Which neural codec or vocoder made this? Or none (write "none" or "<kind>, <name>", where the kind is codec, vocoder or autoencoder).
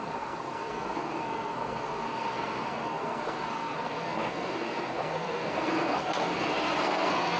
codec, SNAC